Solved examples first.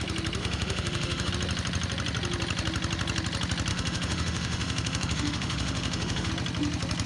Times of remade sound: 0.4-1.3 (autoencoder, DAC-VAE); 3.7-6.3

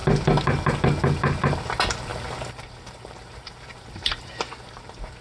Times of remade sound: 2.1-5.2 (vocoder, BigVGAN v2)

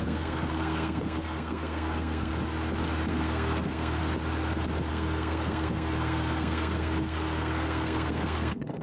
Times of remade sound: 0.0-2.3 (codec, SNAC); 3.1-4.0; 4.9-8.8

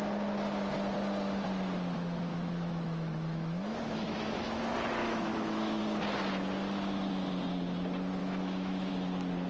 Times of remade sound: 2.3-4.6 (autoencoder, DAC-VAE); 5.0-5.8; 8.2-8.9

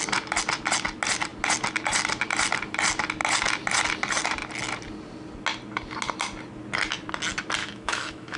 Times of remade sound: 7.6-8.4 (autoencoder, DAC-VAE)

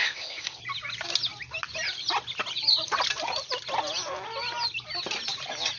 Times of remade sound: 0.0-0.6 (codec, ZipCodec)